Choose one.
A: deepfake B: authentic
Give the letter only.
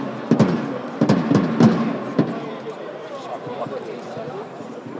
B